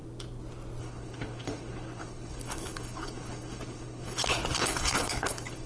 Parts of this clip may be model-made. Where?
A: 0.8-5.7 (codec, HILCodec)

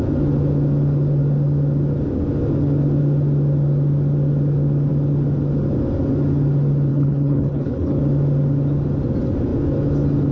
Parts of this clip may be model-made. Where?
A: 6.9-8.0 (codec, HILCodec)

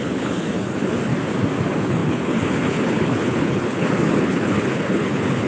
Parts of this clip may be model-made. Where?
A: 0.0-1.1 (codec, HILCodec); 1.6-5.5

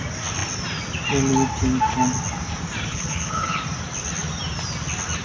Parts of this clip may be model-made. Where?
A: 2.9-3.6 (codec, HILCodec)

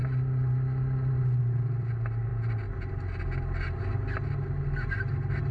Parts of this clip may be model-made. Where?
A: none